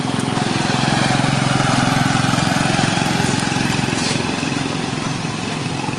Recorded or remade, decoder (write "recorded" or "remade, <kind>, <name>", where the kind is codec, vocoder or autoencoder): recorded